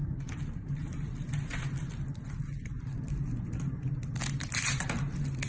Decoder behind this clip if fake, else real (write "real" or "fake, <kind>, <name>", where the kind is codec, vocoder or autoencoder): real